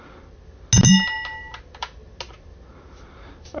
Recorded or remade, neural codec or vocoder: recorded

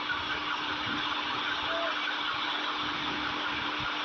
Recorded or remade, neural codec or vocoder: recorded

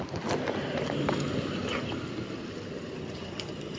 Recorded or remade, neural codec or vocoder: recorded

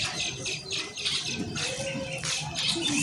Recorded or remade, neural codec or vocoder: recorded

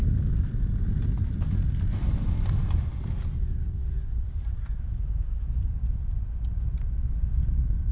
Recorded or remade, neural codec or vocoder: recorded